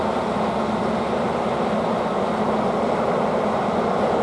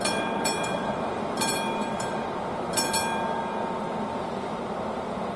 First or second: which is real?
first